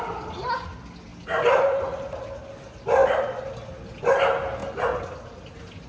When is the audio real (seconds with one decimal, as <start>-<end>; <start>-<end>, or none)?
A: 0.0-3.0; 3.5-5.9